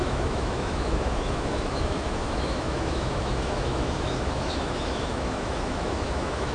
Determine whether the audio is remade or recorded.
remade